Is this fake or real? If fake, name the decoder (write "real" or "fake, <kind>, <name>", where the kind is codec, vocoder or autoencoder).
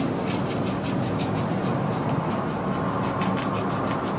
real